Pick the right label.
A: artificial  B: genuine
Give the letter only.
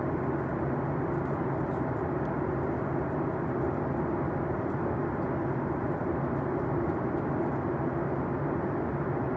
B